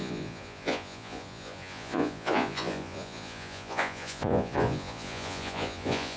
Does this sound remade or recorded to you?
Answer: remade